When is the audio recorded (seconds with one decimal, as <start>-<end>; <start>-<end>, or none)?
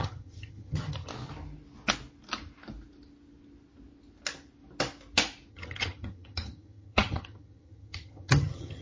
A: 1.1-5.5